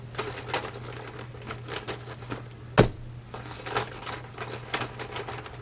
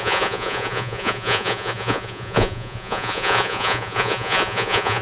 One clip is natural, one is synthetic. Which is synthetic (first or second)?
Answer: second